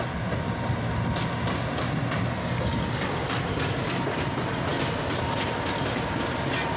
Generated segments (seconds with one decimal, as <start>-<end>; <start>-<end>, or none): none